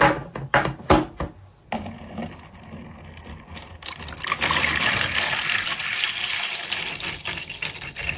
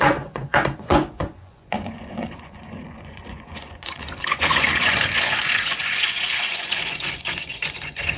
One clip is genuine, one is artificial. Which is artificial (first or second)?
second